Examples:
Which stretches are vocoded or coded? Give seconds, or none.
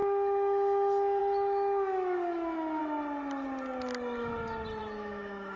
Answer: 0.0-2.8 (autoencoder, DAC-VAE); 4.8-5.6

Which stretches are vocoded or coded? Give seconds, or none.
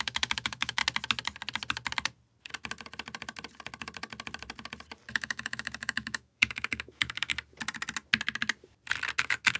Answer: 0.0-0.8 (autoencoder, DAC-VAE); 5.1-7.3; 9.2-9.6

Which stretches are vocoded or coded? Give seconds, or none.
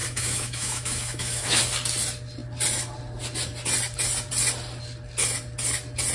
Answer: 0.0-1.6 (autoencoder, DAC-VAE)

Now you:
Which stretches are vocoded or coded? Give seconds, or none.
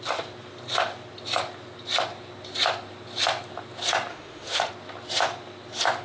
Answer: 4.1-4.7 (autoencoder, DAC-VAE)